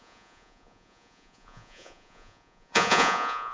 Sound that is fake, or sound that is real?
fake